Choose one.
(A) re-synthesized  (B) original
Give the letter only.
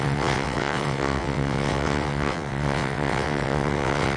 A